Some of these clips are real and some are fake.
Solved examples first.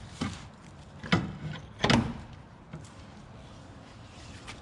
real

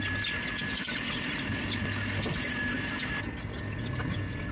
real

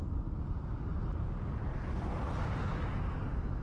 real